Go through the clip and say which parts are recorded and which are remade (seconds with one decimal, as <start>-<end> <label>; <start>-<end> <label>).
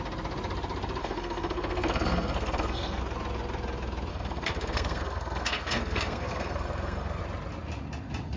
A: 0.0-1.0 recorded; 1.0-3.0 remade; 3.0-4.1 recorded; 4.1-7.2 remade; 7.2-8.4 recorded